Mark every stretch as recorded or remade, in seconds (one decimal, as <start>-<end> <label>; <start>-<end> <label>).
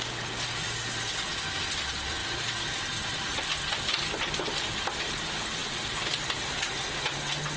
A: 0.0-5.6 recorded; 5.6-6.7 remade; 6.7-7.6 recorded